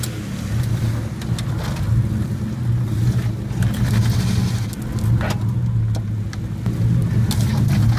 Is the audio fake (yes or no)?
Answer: no